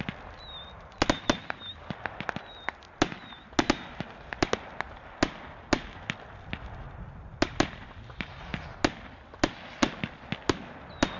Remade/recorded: recorded